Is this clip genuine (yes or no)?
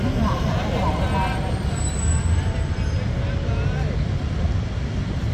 yes